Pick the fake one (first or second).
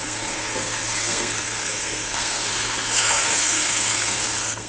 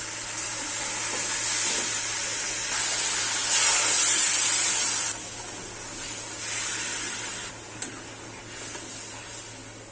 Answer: first